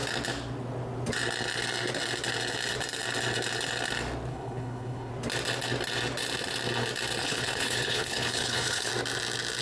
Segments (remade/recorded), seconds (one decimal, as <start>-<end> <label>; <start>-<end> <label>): 0.0-4.3 recorded; 4.3-5.1 remade; 5.1-7.2 recorded; 7.2-8.9 remade; 8.9-9.6 recorded